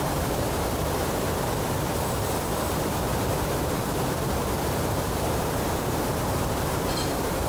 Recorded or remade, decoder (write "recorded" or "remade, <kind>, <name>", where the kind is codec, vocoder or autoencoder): remade, vocoder, BigVGAN v2